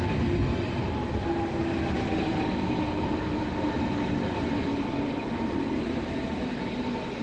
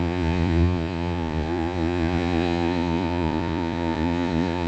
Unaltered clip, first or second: first